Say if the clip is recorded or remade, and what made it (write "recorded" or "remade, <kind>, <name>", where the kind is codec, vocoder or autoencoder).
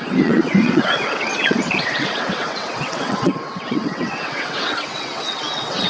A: remade, vocoder, WaveNeXt